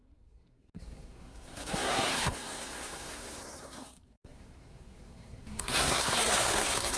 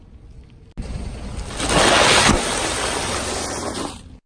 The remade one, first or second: first